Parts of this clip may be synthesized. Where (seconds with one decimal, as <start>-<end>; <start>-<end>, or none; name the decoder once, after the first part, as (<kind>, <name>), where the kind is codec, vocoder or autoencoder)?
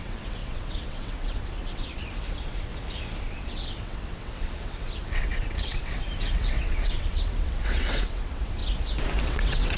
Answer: 0.0-2.7 (vocoder, WaveNeXt); 3.2-8.6; 9.2-9.8